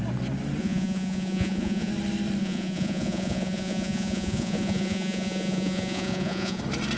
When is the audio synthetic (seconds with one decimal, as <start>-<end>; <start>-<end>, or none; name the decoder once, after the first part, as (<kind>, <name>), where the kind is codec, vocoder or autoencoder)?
0.6-1.9 (vocoder, Vocos); 2.4-6.6

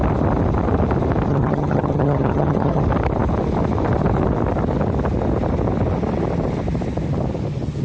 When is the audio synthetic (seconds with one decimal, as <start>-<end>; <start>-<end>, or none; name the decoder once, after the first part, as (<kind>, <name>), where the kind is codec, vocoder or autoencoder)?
1.3-2.8 (vocoder, HiFi-GAN)

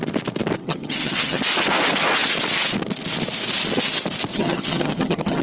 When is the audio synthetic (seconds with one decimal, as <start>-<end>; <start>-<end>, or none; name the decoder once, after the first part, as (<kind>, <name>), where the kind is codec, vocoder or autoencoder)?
0.6-1.4 (vocoder, HiFi-GAN); 4.3-5.4

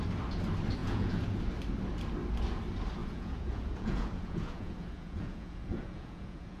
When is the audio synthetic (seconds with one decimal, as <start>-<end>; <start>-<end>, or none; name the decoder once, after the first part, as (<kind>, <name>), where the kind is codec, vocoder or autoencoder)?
0.8-1.4 (vocoder, Vocos); 3.0-6.6

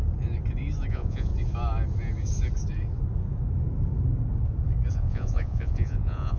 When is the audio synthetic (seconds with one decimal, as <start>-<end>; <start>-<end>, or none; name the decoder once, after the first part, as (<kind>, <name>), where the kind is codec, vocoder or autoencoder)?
0.9-1.3 (vocoder, Vocos); 4.9-6.4

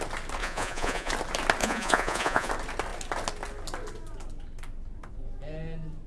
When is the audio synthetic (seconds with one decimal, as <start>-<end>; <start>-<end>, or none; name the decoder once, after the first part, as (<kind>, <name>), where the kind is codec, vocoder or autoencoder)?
0.4-1.1 (vocoder, Vocos); 1.6-2.5

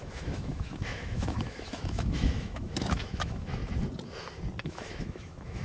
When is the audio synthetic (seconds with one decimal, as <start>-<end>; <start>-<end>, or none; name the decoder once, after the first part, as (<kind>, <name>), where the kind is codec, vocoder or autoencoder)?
0.0-3.6 (autoencoder, DAC-VAE); 4.6-5.6